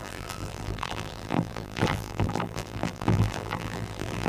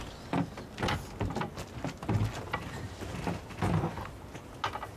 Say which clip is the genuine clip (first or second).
second